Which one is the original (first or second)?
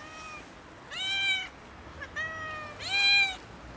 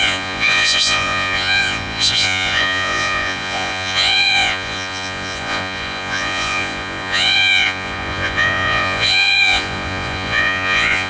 first